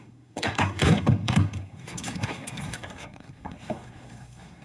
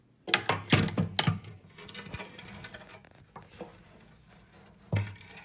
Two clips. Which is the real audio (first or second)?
second